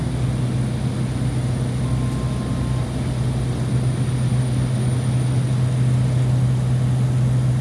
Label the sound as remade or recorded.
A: recorded